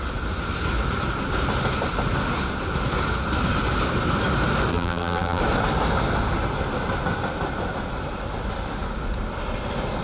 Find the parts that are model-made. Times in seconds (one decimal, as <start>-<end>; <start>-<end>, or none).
4.7-5.4